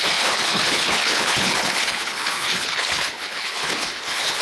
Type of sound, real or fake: fake